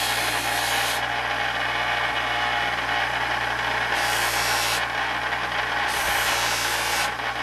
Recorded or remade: recorded